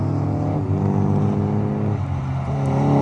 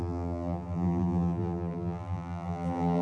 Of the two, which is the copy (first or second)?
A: second